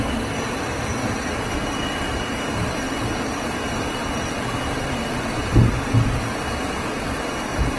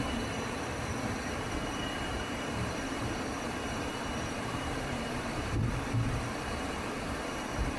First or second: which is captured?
first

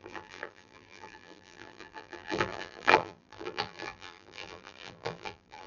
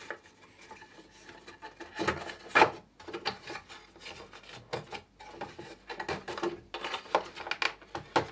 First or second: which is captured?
second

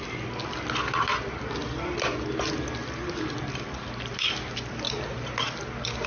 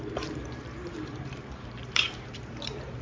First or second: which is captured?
first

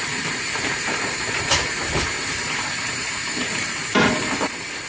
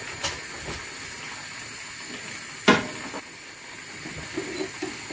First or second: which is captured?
second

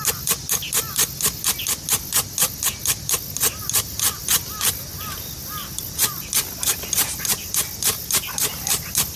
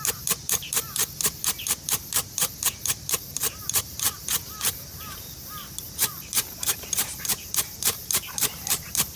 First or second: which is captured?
first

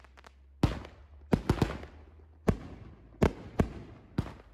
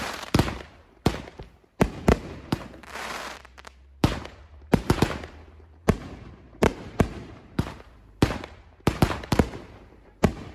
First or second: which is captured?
first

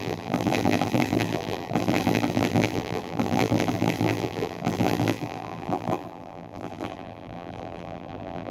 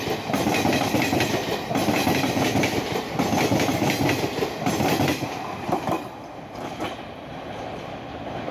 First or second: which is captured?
second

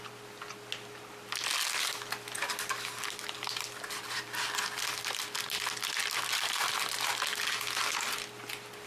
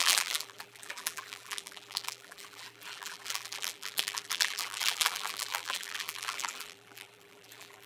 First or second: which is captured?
first